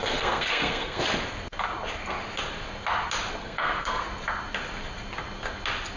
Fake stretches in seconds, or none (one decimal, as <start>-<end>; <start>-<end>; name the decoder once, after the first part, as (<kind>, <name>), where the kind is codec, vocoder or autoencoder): 0.0-1.0 (codec, SNAC); 3.4-4.0